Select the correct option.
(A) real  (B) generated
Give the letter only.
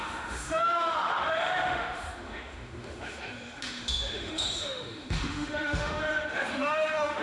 B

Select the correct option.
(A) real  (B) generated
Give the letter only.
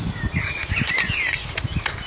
A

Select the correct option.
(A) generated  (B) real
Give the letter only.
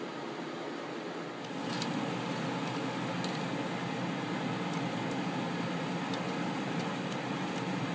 B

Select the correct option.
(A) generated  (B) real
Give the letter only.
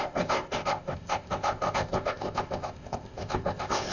A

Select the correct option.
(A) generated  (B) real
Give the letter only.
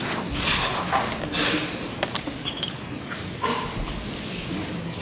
B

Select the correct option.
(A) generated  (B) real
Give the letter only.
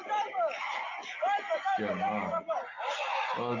B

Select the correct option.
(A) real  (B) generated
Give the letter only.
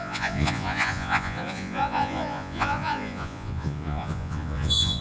B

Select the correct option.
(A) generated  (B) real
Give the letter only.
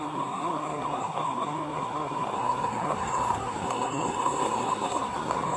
A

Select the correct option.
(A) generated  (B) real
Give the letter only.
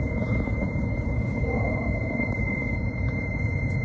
A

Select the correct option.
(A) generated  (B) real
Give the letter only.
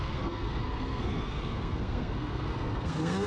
A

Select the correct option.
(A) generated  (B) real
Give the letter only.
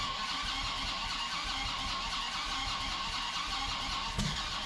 B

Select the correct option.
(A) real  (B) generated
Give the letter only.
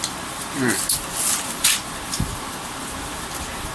A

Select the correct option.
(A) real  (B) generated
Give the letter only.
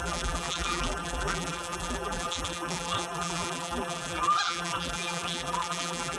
B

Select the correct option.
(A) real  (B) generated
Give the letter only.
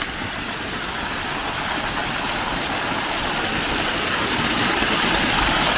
A